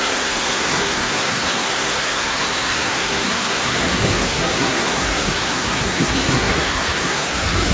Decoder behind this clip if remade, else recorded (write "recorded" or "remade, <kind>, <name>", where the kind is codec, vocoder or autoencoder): remade, codec, SNAC